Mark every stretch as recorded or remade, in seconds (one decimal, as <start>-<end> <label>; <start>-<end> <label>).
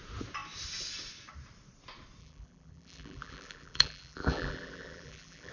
0.0-2.2 recorded; 2.2-5.5 remade